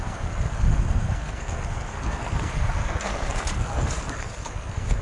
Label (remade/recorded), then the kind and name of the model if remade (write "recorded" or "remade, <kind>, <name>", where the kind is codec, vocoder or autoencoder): remade, codec, SNAC